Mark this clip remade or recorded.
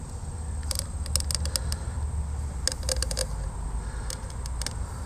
recorded